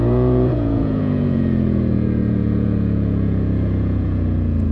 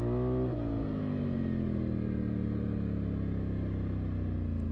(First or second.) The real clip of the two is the second